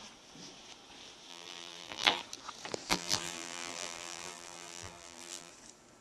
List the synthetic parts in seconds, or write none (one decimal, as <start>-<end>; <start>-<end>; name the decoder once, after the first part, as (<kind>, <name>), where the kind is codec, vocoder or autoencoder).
1.3-2.2 (vocoder, BigVGAN v2); 2.9-5.5